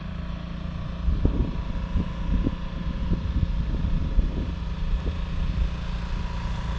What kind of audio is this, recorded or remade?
recorded